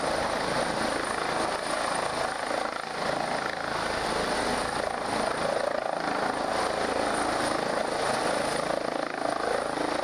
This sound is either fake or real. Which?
real